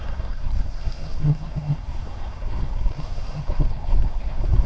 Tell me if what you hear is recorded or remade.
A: remade